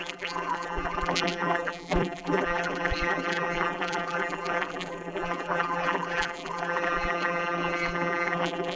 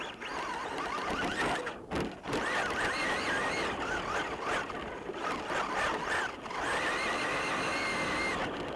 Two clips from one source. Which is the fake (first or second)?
first